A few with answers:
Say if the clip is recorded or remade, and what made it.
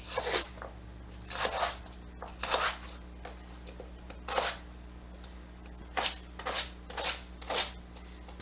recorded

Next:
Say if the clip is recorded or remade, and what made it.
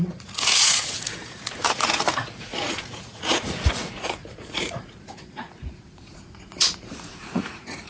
remade, vocoder, Vocos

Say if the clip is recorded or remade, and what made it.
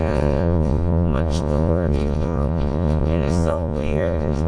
remade, vocoder, Vocos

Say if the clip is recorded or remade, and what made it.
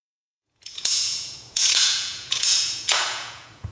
remade, vocoder, Vocos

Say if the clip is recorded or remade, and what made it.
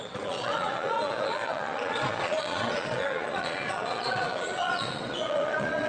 remade, vocoder, Vocos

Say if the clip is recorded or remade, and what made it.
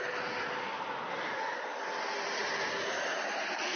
recorded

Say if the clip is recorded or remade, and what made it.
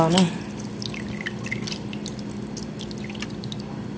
recorded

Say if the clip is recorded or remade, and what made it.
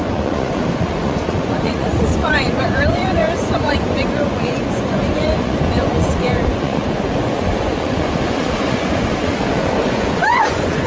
remade, vocoder, Vocos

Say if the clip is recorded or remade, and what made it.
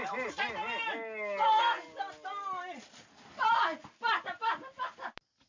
recorded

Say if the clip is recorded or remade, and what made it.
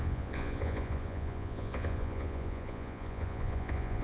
remade, vocoder, Vocos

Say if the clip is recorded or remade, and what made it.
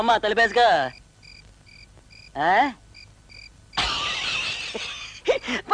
recorded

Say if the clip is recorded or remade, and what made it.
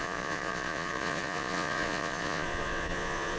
remade, vocoder, Vocos